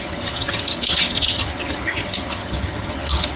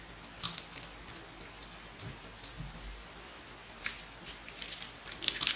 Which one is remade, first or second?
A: first